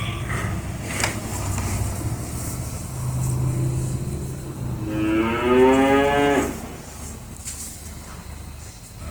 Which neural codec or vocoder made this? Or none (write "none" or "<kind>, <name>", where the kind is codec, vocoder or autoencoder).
none